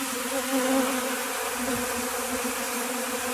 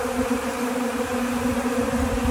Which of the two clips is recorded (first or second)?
first